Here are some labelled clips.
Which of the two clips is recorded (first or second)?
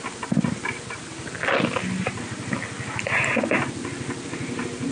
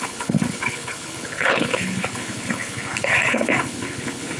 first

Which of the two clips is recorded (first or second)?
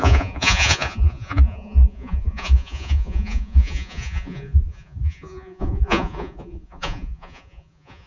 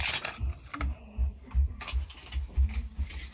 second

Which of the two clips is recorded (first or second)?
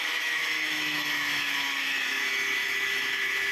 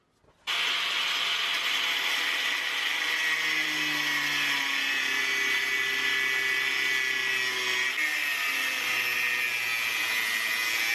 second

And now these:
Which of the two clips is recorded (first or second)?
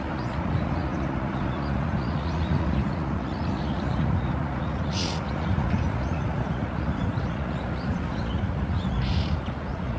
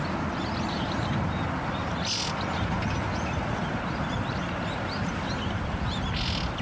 second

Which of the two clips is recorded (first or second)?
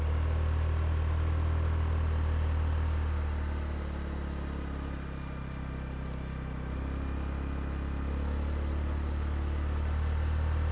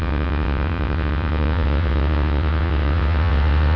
first